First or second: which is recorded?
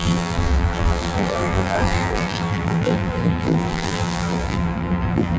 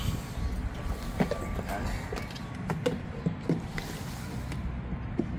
second